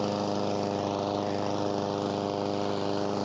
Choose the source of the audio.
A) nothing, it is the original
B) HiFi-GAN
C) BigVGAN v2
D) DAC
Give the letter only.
A